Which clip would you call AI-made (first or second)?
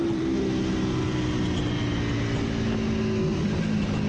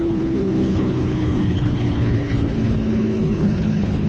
second